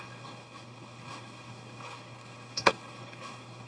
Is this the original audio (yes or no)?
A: no